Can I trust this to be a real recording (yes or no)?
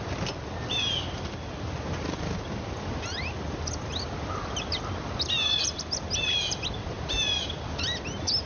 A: yes